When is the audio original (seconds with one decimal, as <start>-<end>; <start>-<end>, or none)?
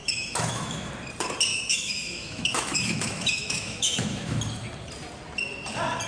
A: 0.9-1.5; 4.4-6.1